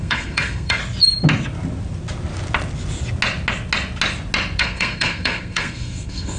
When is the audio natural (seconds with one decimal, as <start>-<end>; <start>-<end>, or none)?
0.8-4.6